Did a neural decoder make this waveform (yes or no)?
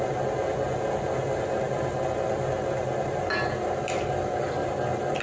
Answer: no